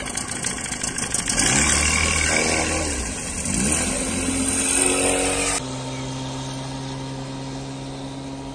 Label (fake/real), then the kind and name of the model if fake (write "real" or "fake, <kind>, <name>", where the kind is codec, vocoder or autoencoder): real